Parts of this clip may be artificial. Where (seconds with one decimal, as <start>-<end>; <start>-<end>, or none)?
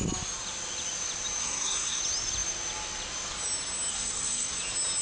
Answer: 1.4-2.0; 3.9-4.6